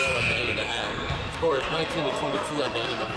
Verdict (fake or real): fake